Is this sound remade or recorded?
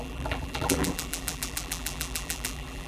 remade